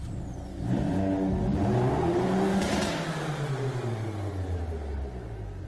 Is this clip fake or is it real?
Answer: real